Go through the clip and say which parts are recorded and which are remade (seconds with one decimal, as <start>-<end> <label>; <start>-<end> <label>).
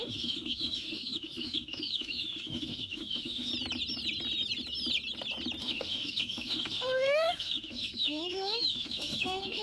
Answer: 0.0-3.5 remade; 3.5-5.6 recorded; 5.6-9.6 remade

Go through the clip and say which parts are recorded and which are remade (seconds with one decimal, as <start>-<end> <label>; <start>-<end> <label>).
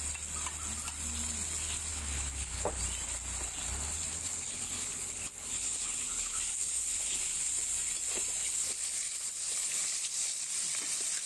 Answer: 0.0-1.9 recorded; 1.9-2.8 remade; 2.8-4.1 recorded; 4.1-7.5 remade; 7.5-8.4 recorded; 8.4-10.4 remade; 10.4-11.3 recorded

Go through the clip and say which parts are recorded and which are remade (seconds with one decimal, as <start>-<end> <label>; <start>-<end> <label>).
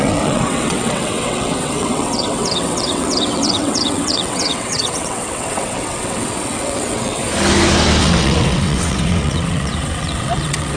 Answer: 0.0-7.2 remade; 7.2-8.0 recorded; 8.0-10.8 remade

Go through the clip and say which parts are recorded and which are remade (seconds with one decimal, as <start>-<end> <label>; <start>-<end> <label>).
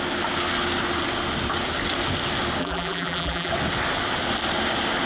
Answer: 0.0-2.6 recorded; 2.6-3.5 remade; 3.5-5.1 recorded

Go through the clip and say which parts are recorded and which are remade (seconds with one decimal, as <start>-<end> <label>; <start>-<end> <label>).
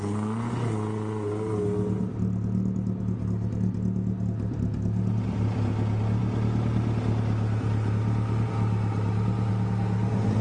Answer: 0.0-10.4 recorded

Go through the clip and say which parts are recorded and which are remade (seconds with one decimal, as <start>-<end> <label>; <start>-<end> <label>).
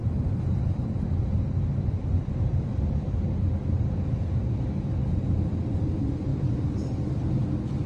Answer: 0.0-4.0 remade; 4.0-7.9 recorded